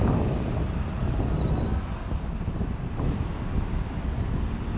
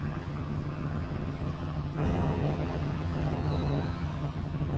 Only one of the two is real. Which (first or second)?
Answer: first